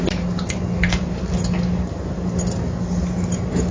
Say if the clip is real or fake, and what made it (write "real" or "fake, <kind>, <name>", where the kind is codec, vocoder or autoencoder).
real